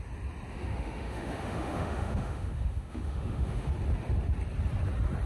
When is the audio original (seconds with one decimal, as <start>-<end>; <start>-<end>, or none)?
0.0-0.5; 3.7-5.3